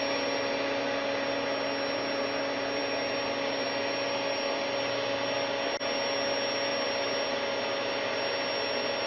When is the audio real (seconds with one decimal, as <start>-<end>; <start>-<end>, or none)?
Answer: 0.0-9.1